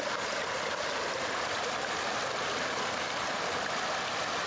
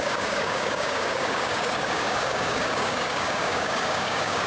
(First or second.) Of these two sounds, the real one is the first